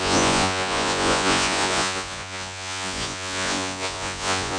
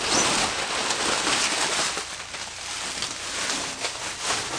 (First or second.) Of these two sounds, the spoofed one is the first